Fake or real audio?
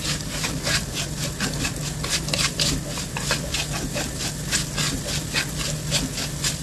real